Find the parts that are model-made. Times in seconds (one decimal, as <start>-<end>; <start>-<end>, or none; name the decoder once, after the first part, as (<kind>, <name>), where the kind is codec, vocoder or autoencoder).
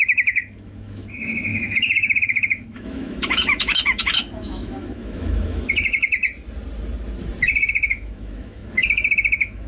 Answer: 0.0-6.2 (autoencoder, DAC-VAE); 7.7-9.7